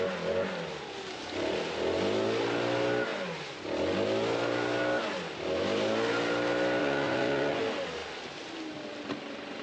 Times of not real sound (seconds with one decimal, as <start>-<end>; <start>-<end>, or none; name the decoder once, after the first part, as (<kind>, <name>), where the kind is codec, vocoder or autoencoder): 6.8-7.6 (vocoder, Vocos)